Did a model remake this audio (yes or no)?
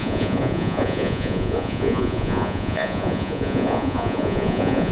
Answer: yes